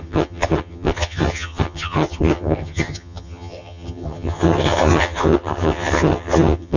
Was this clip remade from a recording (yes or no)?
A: yes